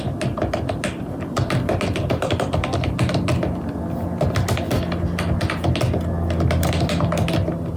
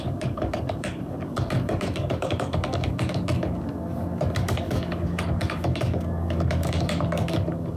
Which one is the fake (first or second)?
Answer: second